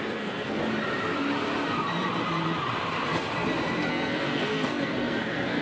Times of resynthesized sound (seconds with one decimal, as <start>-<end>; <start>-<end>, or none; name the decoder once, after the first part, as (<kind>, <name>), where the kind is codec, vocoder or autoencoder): 0.0-0.6 (codec, SNAC); 3.9-5.6